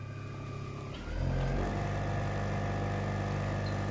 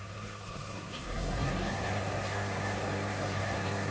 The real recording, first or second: first